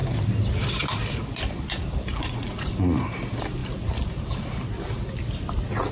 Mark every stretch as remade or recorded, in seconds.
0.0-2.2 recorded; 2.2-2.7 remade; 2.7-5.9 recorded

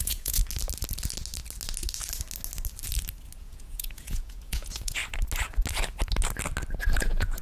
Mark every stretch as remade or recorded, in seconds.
0.0-0.4 remade; 0.4-3.4 recorded; 3.4-5.0 remade; 5.0-7.0 recorded; 7.0-7.4 remade